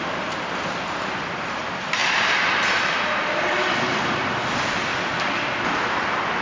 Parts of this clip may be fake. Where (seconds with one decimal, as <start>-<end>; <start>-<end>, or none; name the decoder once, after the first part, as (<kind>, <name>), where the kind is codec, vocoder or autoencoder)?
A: 0.0-2.0 (vocoder, BigVGAN v2); 3.4-5.1; 6.0-6.4